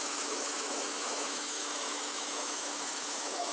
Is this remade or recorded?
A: remade